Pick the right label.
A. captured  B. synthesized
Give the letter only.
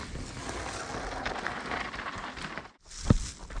A